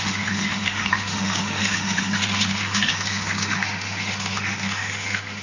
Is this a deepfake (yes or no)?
yes